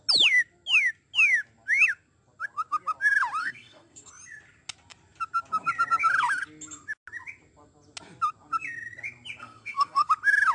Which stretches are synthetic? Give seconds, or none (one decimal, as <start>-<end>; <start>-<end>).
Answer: 3.4-4.1; 9.4-10.1